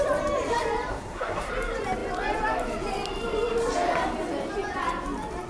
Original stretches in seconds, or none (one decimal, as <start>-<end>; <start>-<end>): 0.0-0.9; 1.5-5.5